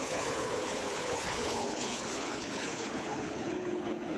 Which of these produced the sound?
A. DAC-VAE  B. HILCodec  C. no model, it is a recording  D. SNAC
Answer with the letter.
B